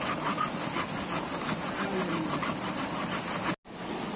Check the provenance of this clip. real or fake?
real